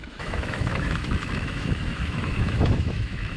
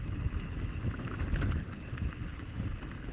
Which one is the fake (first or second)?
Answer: first